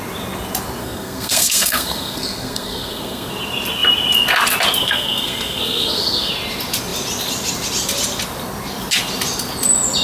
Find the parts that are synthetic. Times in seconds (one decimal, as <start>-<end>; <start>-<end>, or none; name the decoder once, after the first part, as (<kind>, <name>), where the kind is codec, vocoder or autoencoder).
0.8-3.3 (codec, SNAC); 4.8-6.3